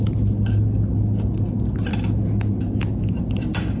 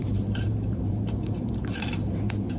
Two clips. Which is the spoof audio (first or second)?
second